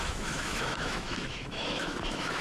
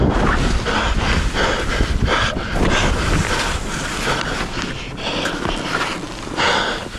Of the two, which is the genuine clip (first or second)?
second